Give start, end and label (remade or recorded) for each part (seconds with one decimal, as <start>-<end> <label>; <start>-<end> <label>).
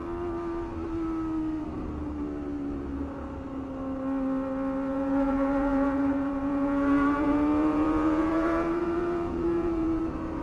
0.0-4.9 recorded; 4.9-10.0 remade; 10.0-10.4 recorded